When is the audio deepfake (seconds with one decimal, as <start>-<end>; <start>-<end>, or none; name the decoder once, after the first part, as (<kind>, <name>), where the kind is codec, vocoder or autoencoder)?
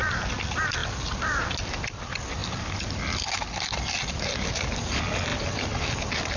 5.3-6.4 (vocoder, BigVGAN v2)